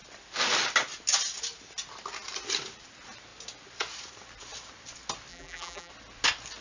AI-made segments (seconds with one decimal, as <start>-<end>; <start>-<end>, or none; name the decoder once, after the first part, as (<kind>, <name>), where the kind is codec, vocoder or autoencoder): 5.3-5.9 (vocoder, BigVGAN v2)